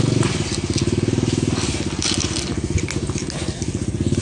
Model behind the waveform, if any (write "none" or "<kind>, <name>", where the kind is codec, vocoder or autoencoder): none